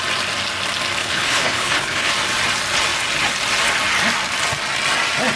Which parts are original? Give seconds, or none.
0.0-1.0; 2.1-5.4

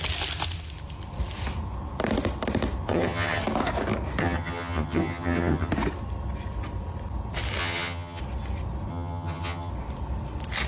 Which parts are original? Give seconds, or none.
0.0-2.9; 3.4-4.2; 5.7-7.6; 8.2-8.9; 9.7-10.7

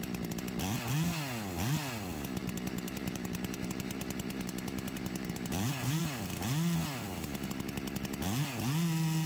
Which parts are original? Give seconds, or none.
0.0-2.4; 6.0-9.3